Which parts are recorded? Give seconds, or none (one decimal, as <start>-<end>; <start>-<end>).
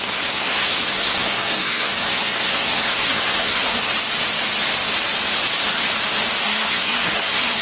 3.9-6.4